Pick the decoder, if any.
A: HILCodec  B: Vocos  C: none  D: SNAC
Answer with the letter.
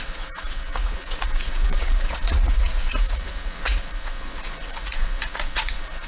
B